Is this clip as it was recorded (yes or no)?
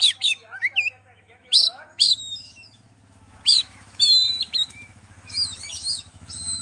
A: no